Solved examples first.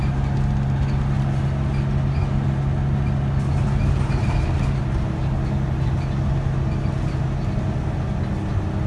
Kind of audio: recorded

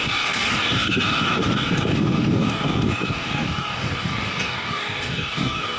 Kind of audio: remade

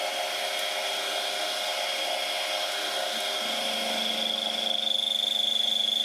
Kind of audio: recorded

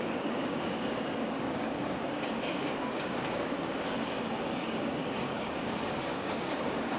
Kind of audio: remade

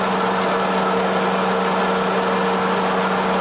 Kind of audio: recorded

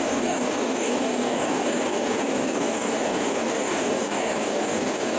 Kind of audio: remade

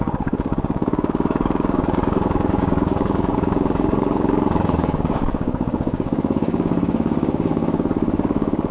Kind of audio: remade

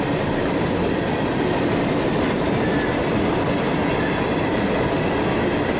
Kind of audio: recorded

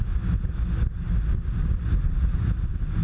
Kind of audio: recorded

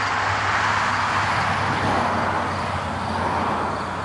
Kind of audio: recorded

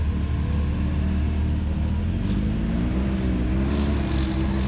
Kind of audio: recorded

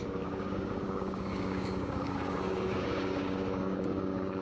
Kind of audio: remade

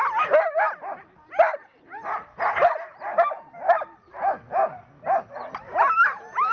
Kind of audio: recorded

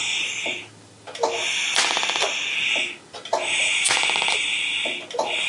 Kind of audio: recorded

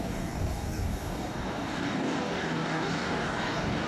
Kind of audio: remade